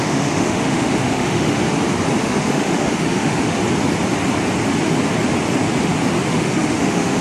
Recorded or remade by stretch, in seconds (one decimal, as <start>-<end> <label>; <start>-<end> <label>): 0.0-1.6 remade; 1.6-2.2 recorded; 2.2-3.6 remade; 3.6-6.3 recorded; 6.3-7.2 remade